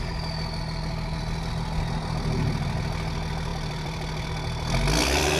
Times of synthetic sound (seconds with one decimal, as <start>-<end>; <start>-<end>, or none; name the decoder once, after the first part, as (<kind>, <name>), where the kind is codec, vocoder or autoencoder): 3.5-4.3 (vocoder, BigVGAN v2)